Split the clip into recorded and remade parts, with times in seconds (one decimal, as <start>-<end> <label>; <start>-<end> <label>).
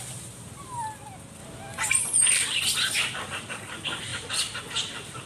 0.0-5.3 recorded